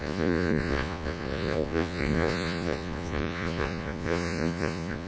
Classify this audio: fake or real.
fake